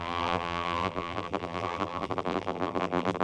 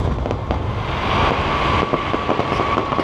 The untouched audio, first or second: second